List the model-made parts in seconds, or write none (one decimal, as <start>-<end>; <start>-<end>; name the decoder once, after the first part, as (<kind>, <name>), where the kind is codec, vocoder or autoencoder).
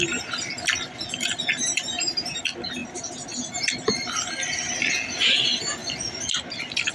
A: 1.7-2.4 (vocoder, BigVGAN v2)